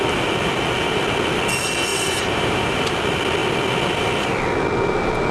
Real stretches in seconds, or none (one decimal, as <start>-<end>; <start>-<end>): 0.0-1.9; 2.8-5.3